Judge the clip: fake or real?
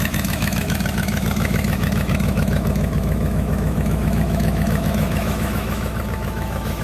fake